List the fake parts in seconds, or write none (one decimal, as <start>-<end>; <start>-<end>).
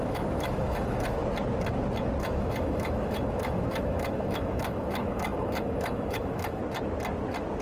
0.0-1.2; 2.2-6.6